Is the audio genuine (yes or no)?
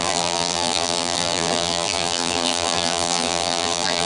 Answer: no